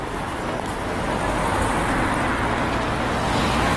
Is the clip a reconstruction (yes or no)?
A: no